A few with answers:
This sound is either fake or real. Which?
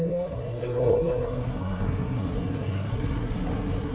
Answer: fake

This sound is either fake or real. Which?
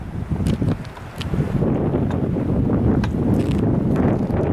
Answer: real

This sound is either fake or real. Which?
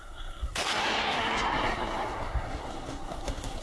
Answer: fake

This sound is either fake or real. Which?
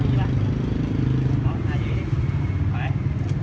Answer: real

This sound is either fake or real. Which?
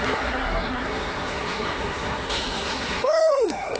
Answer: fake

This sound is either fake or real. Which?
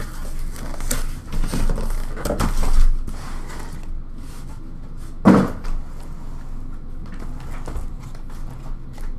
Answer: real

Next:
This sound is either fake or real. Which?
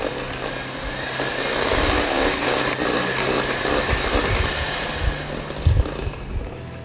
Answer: real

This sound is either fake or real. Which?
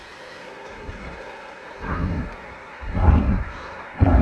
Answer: fake